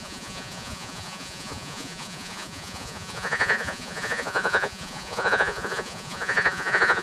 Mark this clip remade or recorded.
remade